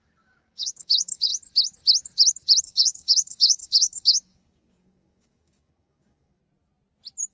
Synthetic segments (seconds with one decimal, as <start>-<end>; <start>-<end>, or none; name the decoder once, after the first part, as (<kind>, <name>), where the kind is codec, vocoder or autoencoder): 0.0-1.3 (codec, DAC); 2.6-6.4